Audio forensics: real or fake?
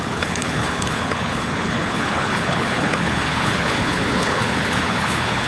fake